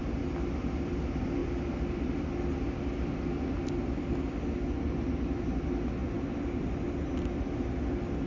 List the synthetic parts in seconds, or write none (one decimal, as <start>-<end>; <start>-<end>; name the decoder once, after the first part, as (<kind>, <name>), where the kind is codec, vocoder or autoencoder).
none